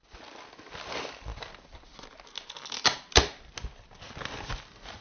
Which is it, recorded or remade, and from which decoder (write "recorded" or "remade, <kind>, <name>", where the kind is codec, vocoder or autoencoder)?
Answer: recorded